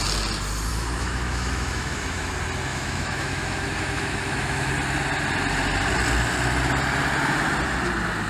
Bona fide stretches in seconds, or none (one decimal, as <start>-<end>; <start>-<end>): 0.0-0.7; 2.3-2.7; 4.7-8.3